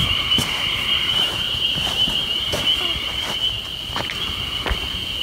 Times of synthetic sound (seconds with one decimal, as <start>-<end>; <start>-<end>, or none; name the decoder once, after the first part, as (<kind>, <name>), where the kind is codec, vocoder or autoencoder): 0.0-2.6 (vocoder, BigVGAN v2)